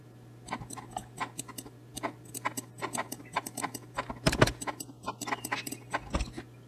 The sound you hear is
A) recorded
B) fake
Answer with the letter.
A